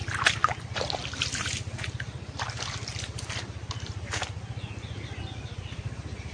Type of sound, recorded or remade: recorded